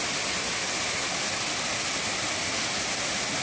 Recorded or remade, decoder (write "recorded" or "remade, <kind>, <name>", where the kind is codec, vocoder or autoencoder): recorded